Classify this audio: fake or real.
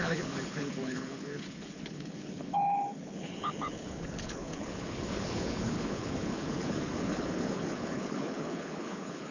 fake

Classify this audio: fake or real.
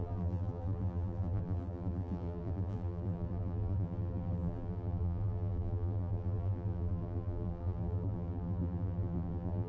fake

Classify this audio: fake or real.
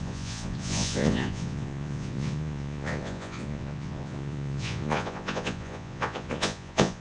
fake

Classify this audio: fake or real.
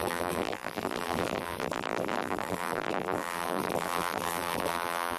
fake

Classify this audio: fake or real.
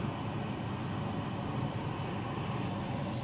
real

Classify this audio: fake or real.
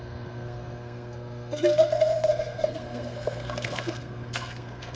fake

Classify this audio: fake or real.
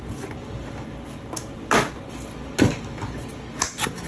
real